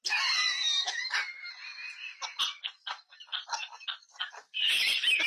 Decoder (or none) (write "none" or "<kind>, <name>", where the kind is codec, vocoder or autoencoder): none